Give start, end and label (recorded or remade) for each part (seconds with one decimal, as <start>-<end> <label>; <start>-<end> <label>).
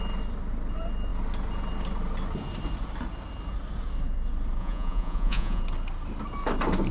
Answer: 0.0-4.6 recorded; 4.6-5.6 remade; 5.6-6.9 recorded